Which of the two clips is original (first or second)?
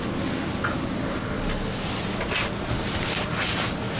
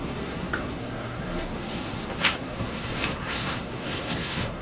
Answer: first